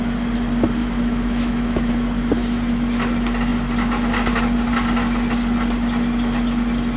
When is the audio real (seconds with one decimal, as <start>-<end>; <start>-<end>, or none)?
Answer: 0.0-0.8; 1.9-7.0